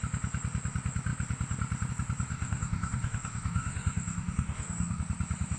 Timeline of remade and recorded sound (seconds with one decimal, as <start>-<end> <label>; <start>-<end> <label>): 0.0-2.3 recorded; 2.3-5.0 remade; 5.0-5.6 recorded